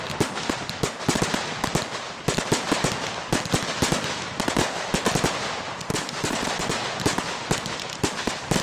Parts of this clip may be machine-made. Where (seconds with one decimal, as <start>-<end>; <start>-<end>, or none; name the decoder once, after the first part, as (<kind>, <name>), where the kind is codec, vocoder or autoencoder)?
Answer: 5.9-6.8 (vocoder, BigVGAN v2)